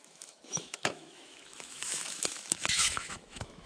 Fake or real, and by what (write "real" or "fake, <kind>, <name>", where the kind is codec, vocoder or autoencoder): fake, autoencoder, DAC-VAE